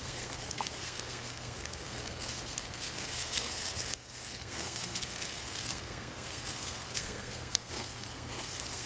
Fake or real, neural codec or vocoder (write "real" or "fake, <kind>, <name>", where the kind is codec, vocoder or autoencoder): fake, codec, SNAC